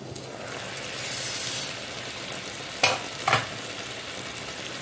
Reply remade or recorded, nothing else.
recorded